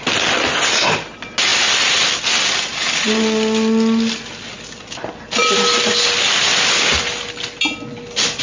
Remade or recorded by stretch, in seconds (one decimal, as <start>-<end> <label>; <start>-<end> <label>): 0.0-8.4 recorded